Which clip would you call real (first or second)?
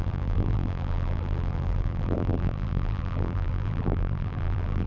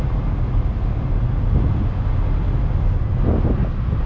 second